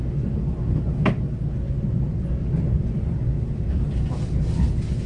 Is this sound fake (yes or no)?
no